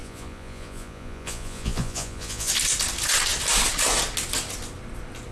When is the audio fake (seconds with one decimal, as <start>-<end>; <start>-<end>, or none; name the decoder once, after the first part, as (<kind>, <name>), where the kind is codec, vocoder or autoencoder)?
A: 0.0-2.5 (vocoder, Vocos)